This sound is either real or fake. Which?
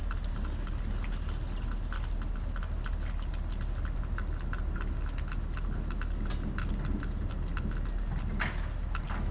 real